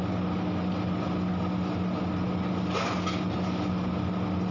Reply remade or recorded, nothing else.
recorded